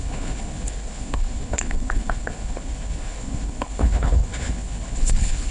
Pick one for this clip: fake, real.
fake